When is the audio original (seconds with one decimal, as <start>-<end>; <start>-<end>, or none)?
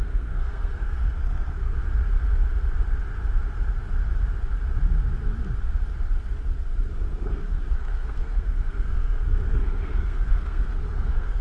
1.8-6.9